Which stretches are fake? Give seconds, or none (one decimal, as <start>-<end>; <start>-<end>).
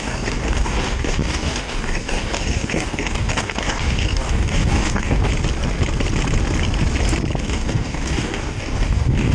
0.0-5.3; 7.4-9.3